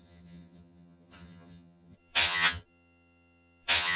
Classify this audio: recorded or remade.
remade